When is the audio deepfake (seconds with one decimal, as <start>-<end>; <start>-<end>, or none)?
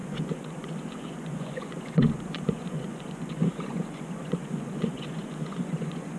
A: 0.0-6.2